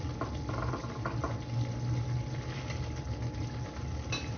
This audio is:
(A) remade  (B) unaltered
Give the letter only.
B